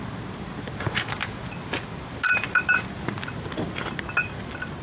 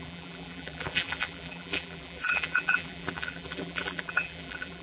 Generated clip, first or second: second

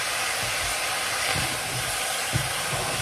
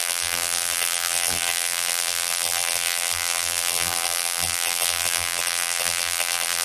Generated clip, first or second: second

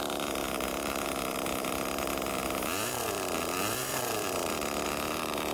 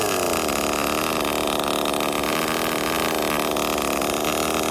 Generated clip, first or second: first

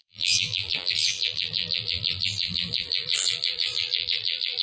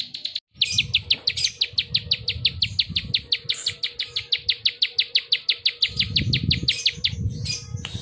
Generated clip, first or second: first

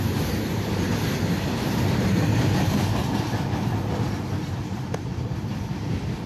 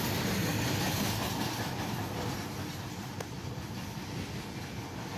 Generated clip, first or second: first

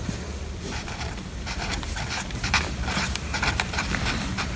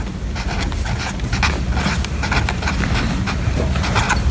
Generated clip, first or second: first